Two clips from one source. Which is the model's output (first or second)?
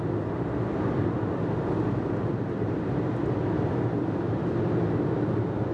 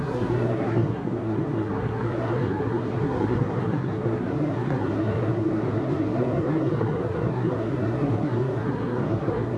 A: second